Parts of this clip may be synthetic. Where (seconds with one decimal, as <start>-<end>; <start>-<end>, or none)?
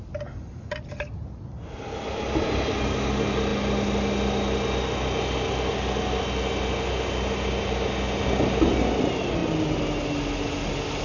none